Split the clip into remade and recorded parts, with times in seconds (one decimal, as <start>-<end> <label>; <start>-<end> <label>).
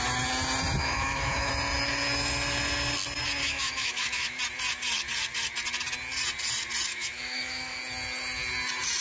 0.0-0.8 recorded; 0.8-1.5 remade; 1.5-3.4 recorded; 3.4-4.4 remade; 4.4-6.9 recorded; 6.9-7.8 remade; 7.8-9.0 recorded